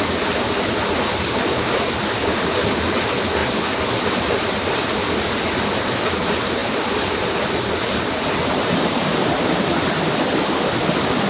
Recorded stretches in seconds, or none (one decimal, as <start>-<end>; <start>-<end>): 0.0-3.4; 4.9-6.6; 9.3-11.3